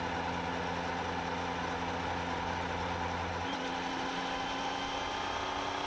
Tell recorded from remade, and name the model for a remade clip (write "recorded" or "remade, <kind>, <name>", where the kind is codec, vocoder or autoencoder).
recorded